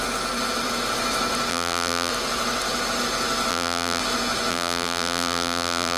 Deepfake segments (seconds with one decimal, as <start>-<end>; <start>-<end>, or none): 1.5-2.1; 3.5-4.0; 4.5-6.0

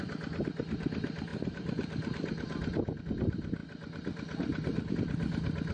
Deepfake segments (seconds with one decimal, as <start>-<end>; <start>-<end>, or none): none